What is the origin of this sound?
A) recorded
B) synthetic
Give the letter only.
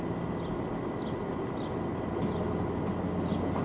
A